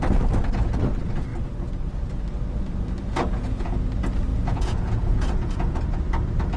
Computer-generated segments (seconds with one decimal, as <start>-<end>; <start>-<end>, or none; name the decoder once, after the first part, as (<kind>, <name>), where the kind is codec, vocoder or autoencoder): 3.1-3.9 (vocoder, Vocos); 4.3-5.8